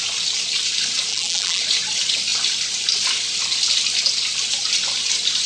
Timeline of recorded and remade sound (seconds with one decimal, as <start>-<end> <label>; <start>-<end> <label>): 0.0-1.1 recorded; 1.1-1.6 remade; 1.6-5.5 recorded